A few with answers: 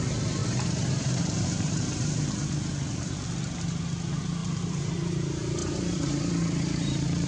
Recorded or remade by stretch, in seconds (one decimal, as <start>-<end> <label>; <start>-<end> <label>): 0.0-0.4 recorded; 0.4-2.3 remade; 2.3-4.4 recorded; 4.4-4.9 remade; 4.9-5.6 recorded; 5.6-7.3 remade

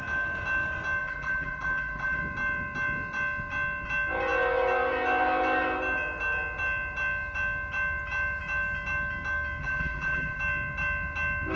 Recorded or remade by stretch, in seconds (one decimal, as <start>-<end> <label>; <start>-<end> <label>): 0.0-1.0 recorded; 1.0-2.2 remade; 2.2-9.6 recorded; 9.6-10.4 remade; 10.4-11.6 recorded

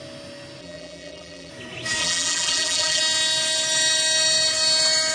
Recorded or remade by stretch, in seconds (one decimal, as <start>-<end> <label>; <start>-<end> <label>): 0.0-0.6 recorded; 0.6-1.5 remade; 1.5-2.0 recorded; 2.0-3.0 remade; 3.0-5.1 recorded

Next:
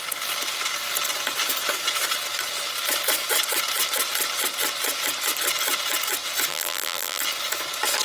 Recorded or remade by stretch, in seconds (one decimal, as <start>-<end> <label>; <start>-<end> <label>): 0.0-6.5 recorded; 6.5-7.2 remade; 7.2-8.0 recorded

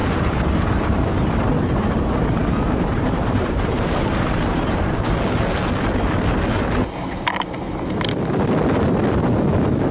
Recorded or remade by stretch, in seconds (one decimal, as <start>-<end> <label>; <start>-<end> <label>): 0.0-5.2 remade; 5.2-9.9 recorded

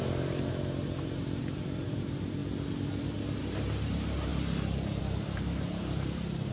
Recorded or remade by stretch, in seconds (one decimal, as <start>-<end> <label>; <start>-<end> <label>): 0.0-2.4 remade; 2.4-3.4 recorded; 3.4-4.3 remade; 4.3-5.0 recorded; 5.0-6.5 remade

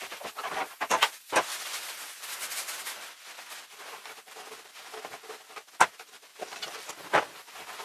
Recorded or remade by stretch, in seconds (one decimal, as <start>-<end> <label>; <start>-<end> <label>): 0.0-6.3 recorded; 6.3-6.9 remade; 6.9-7.8 recorded

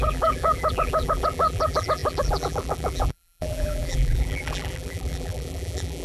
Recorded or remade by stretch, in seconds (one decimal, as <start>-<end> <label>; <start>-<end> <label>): 0.0-6.0 remade